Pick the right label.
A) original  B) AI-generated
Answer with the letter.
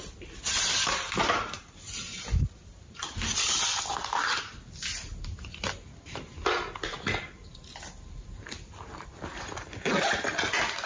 A